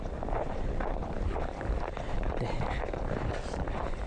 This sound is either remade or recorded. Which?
remade